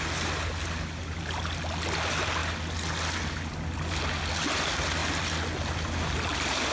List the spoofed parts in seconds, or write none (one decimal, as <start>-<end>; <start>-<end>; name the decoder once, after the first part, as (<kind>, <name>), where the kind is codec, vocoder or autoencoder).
none